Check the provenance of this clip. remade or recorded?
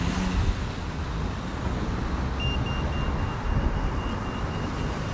recorded